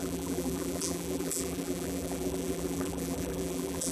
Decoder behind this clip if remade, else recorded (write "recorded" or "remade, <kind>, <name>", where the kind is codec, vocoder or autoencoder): remade, vocoder, BigVGAN v2